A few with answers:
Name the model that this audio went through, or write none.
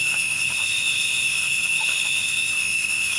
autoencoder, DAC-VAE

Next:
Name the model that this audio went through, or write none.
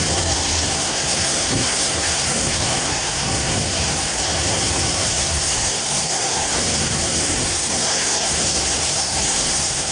codec, SNAC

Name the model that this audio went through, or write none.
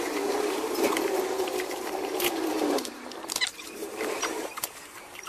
vocoder, BigVGAN v2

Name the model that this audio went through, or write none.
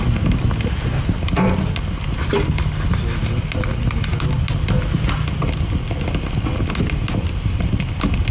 none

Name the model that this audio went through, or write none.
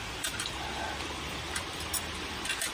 vocoder, BigVGAN v2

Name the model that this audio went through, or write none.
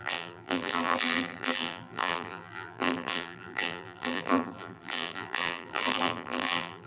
vocoder, BigVGAN v2